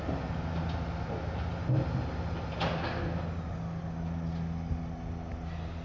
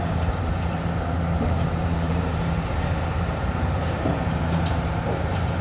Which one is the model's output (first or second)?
second